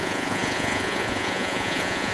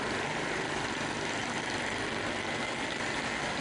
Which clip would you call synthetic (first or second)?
first